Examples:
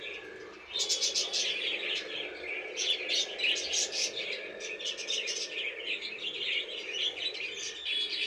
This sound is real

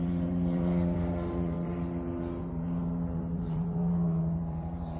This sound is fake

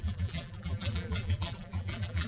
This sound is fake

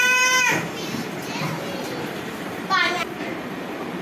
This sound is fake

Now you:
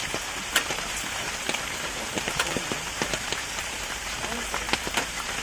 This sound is fake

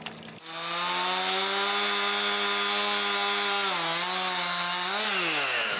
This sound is real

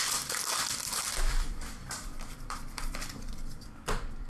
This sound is fake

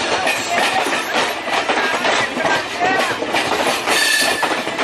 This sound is fake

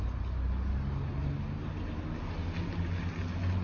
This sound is real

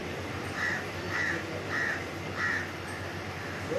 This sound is real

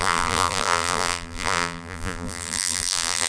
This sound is fake